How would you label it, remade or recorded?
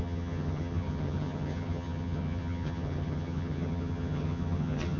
remade